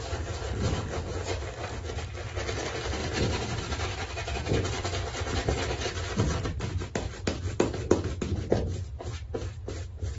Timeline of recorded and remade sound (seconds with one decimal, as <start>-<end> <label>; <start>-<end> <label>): 0.0-10.2 recorded

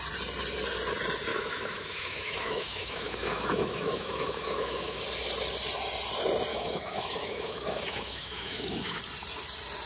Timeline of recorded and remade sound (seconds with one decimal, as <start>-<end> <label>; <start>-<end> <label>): 0.0-1.3 recorded; 1.3-5.0 remade; 5.0-6.5 recorded; 6.5-9.0 remade; 9.0-9.9 recorded

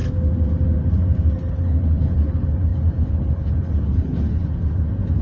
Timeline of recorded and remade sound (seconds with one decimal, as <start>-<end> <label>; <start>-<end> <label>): 0.0-1.5 recorded; 1.5-4.4 remade; 4.4-5.2 recorded

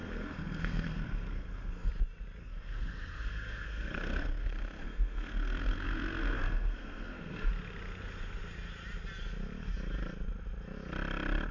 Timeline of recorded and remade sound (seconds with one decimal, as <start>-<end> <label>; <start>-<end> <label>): 0.0-1.9 remade; 1.9-2.4 recorded; 2.4-7.5 remade; 7.5-11.5 recorded